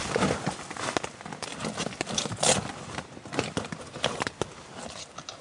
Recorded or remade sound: recorded